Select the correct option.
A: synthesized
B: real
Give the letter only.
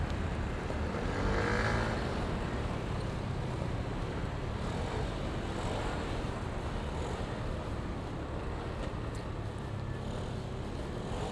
B